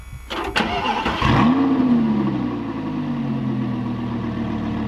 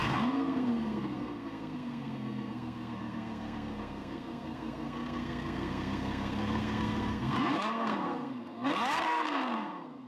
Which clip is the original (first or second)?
first